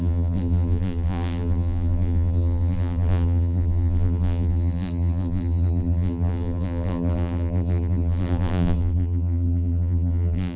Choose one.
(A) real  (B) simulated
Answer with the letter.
B